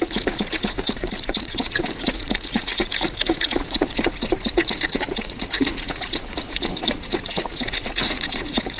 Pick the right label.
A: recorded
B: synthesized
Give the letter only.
B